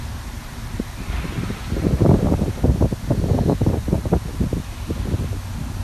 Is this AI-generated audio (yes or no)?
no